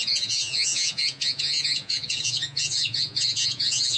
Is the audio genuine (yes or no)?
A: no